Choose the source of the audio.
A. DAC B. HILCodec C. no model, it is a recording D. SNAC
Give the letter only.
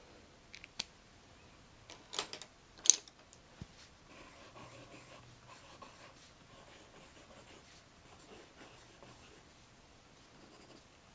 C